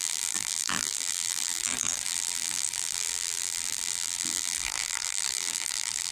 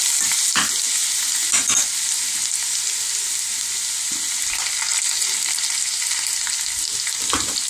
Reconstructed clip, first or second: first